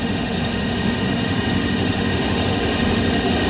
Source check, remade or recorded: remade